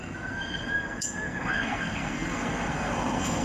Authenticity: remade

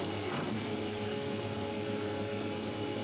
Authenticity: remade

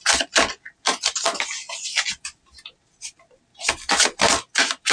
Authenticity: recorded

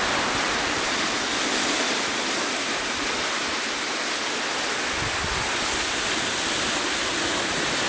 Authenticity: recorded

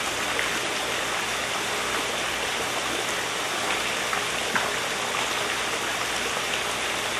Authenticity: recorded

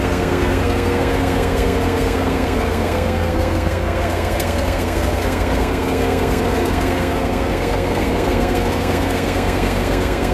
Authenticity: remade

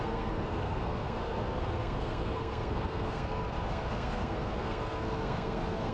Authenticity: remade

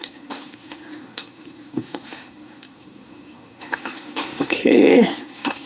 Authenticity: remade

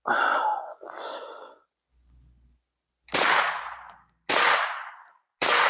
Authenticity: recorded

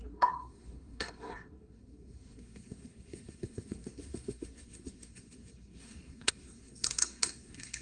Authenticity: remade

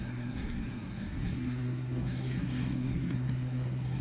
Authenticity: remade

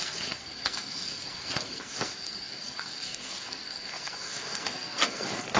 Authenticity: remade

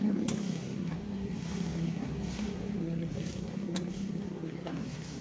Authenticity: remade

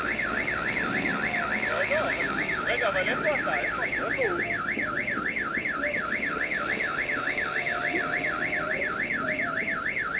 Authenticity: recorded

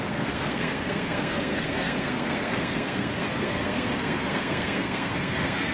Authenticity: remade